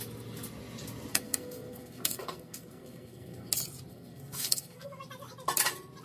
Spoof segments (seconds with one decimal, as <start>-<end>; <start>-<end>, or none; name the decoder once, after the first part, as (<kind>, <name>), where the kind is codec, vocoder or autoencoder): 1.1-3.5 (codec, SNAC); 3.9-5.0